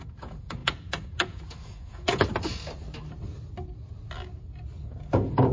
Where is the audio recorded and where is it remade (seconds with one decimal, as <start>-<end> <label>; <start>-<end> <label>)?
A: 0.0-2.3 remade; 2.3-4.8 recorded; 4.8-5.5 remade